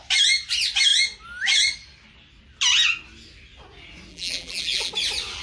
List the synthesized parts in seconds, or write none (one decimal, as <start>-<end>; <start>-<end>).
4.1-4.9